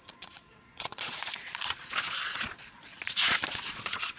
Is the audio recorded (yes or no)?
no